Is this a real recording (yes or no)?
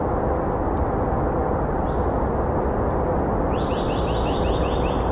yes